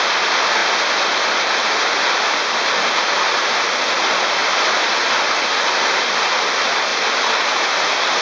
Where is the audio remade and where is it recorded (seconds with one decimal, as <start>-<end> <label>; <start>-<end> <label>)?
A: 0.0-8.2 recorded